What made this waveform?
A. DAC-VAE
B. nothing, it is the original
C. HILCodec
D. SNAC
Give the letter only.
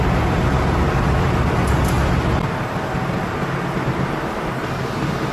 B